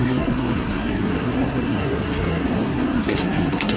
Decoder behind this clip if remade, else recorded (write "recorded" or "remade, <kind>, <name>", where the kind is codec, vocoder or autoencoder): remade, codec, SNAC